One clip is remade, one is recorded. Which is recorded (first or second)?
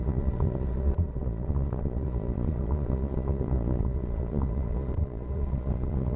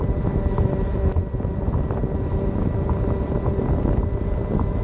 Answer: second